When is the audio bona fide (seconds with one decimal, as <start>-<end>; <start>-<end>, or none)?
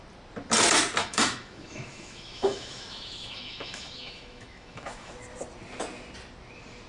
0.0-1.0; 5.1-6.9